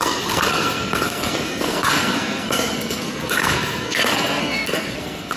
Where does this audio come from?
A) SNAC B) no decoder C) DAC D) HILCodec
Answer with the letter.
A